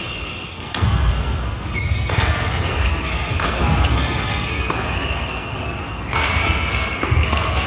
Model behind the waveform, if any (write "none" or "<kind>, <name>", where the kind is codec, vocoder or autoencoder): codec, SNAC